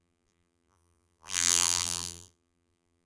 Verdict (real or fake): fake